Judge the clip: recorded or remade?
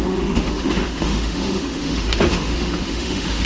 remade